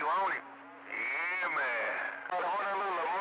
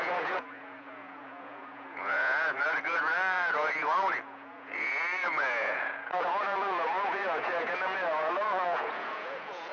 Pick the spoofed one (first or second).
second